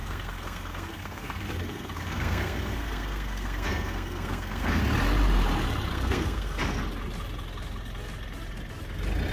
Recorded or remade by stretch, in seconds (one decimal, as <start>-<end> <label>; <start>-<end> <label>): 0.0-4.8 remade; 4.8-5.9 recorded; 5.9-6.6 remade; 6.6-9.3 recorded